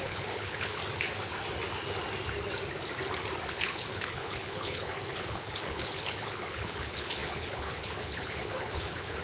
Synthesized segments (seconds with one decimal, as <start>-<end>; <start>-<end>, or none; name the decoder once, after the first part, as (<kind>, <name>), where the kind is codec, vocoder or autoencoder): 0.0-0.8 (codec, HILCodec); 3.5-9.2